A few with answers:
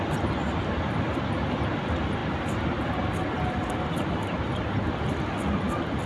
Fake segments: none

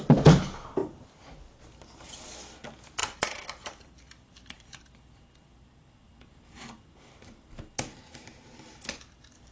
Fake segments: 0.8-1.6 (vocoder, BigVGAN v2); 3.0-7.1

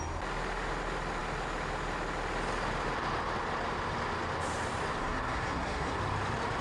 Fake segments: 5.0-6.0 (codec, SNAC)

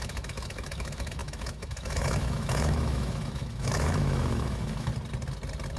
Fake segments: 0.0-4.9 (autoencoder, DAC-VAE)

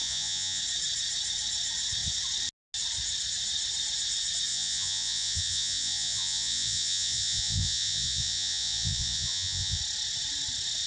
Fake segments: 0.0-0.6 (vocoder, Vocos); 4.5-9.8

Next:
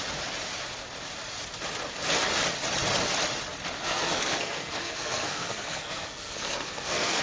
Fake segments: 3.8-7.2 (codec, SNAC)

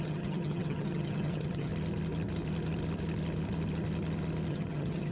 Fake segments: 0.0-1.7 (vocoder, HiFi-GAN); 4.5-5.1

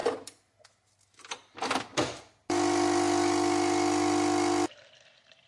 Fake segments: none